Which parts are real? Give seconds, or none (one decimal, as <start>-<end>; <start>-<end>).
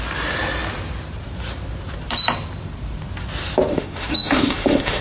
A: 0.0-3.7